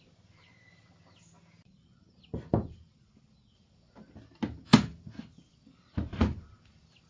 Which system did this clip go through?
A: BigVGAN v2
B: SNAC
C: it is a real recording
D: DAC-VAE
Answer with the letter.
C